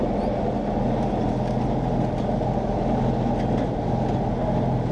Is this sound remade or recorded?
recorded